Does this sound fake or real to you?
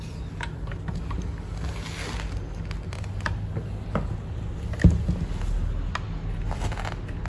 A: real